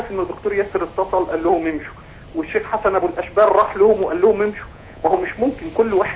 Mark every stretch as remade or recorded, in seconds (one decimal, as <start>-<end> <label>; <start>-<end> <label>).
0.0-4.7 recorded; 4.7-5.3 remade; 5.3-6.2 recorded